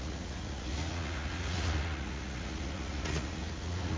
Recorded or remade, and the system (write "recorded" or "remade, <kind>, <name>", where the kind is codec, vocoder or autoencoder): remade, vocoder, Vocos